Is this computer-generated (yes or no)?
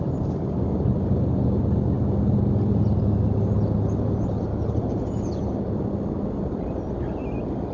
no